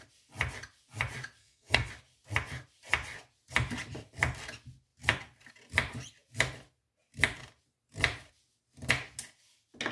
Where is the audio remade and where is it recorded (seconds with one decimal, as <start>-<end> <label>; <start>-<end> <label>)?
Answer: 0.0-1.4 recorded; 1.4-1.9 remade; 1.9-9.9 recorded